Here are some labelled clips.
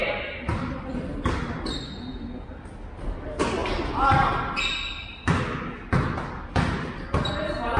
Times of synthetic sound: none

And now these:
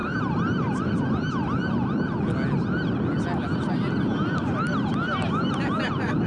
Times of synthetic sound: 0.0-0.9 (vocoder, BigVGAN v2)

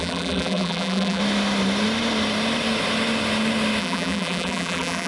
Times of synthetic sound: 0.0-1.2 (vocoder, BigVGAN v2); 3.8-5.1

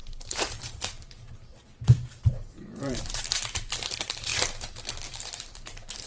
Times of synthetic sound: 0.0-4.3 (vocoder, BigVGAN v2); 5.1-6.1

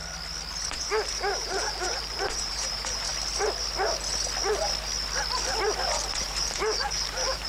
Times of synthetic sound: 0.8-3.1 (vocoder, BigVGAN v2); 6.2-7.5